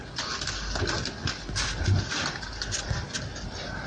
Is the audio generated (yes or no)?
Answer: no